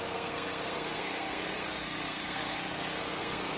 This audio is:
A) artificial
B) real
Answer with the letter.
A